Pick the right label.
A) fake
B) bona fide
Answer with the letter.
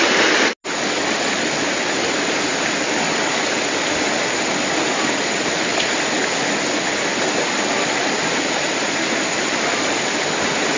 B